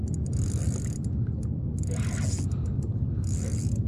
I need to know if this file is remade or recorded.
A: recorded